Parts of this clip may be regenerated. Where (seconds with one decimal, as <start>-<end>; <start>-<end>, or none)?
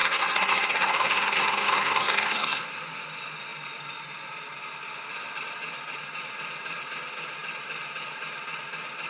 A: 0.0-2.6